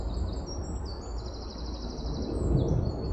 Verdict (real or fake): real